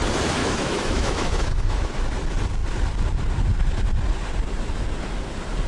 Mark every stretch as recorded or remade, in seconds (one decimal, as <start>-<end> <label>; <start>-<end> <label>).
0.0-0.4 recorded; 0.4-2.0 remade; 2.0-5.7 recorded

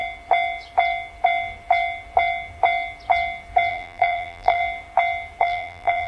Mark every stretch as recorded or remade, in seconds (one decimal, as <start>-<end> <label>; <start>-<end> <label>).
0.0-3.7 recorded; 3.7-4.6 remade; 4.6-5.4 recorded; 5.4-6.1 remade

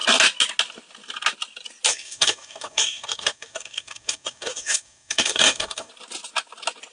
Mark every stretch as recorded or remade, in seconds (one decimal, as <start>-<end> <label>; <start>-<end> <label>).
0.0-1.9 recorded; 1.9-5.9 remade; 5.9-6.9 recorded

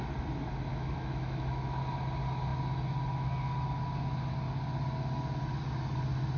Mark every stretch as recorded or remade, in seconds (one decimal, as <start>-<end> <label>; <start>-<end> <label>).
0.0-0.7 recorded; 0.7-1.8 remade; 1.8-6.4 recorded

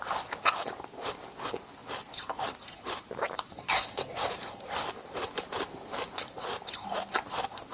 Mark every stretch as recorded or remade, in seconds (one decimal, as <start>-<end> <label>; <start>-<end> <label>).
0.0-1.8 recorded; 1.8-6.4 remade; 6.4-7.7 recorded